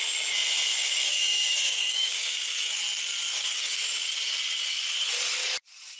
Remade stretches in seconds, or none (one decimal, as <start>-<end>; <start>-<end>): 0.7-2.8; 3.3-4.1